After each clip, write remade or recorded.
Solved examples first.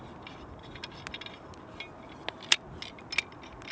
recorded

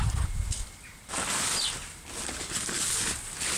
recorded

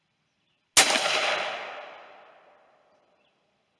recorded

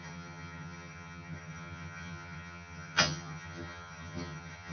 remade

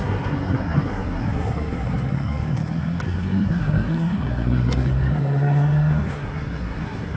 remade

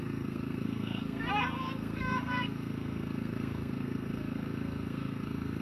remade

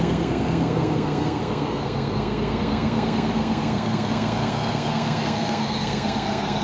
remade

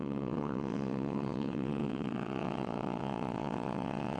remade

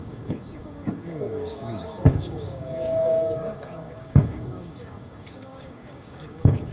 remade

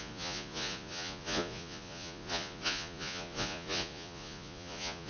remade